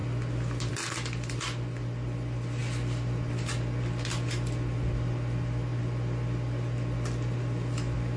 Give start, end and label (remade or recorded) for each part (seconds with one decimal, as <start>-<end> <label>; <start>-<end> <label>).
0.0-8.2 recorded